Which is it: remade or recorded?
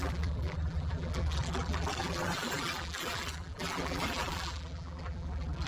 remade